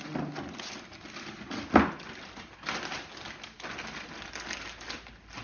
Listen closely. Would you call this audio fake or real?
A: real